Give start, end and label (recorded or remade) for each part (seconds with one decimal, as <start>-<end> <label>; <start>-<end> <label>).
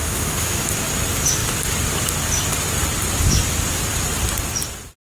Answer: 0.0-0.8 remade; 0.8-5.0 recorded